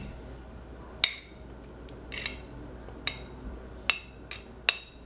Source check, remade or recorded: recorded